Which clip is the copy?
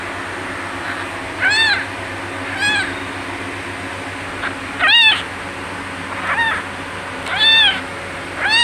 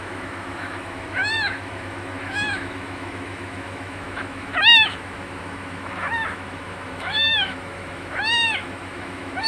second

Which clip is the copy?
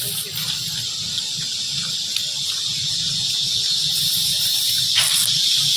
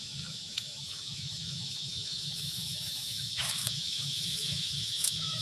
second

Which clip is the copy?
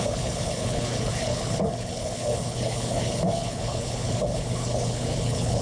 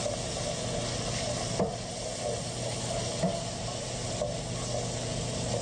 first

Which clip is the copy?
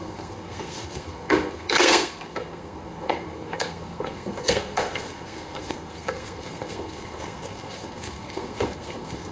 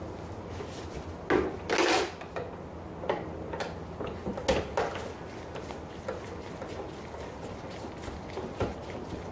first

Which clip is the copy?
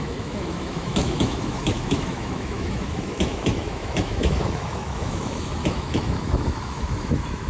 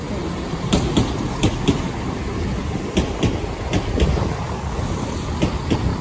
first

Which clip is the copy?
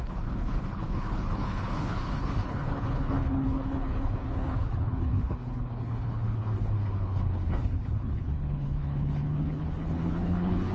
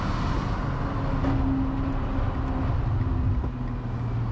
first